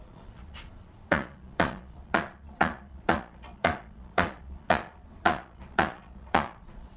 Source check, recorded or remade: remade